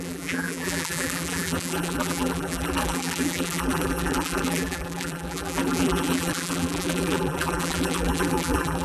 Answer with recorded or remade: remade